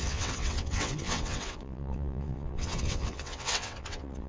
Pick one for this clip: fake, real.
fake